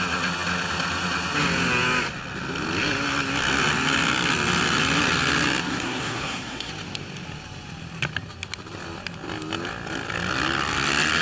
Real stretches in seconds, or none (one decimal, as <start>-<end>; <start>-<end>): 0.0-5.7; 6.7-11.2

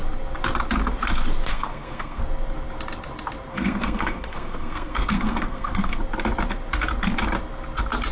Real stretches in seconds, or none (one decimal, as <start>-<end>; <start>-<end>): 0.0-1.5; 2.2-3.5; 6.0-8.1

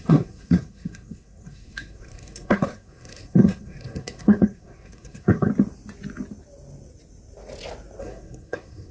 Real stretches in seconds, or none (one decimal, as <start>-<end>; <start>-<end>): 5.5-8.0

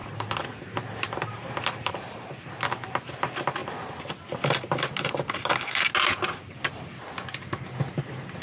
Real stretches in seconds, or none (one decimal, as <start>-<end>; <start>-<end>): 0.0-8.4